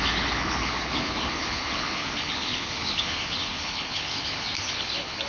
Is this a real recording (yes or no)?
no